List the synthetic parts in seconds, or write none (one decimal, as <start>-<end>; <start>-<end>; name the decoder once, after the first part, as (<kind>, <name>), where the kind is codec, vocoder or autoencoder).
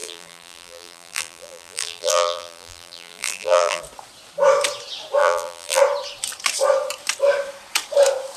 0.0-3.8 (vocoder, BigVGAN v2); 5.2-5.8